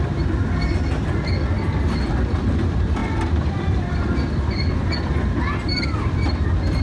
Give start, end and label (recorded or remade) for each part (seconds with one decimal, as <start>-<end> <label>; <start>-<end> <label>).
0.0-6.8 recorded